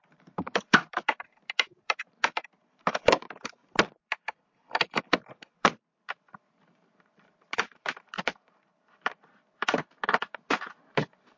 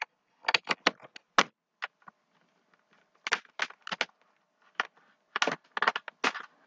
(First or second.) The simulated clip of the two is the first